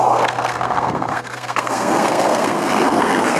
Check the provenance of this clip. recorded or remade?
remade